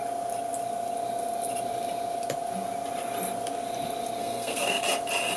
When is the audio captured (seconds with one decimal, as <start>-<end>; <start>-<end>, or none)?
0.0-4.2; 4.8-5.4